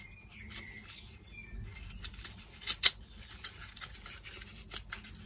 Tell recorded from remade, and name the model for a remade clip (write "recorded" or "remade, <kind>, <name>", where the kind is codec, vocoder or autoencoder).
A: recorded